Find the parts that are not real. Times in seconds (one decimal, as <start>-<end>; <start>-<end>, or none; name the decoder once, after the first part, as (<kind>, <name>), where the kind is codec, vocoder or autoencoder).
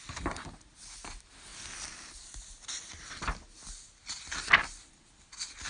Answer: none